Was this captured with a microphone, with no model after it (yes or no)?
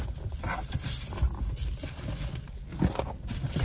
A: yes